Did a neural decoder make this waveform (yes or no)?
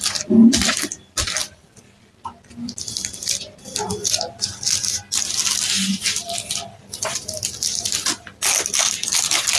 no